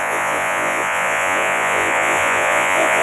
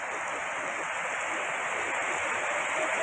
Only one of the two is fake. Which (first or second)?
first